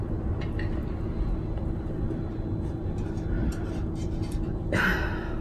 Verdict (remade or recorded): recorded